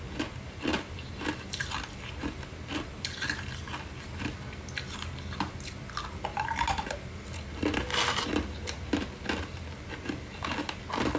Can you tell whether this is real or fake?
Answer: real